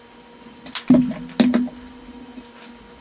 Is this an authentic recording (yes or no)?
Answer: yes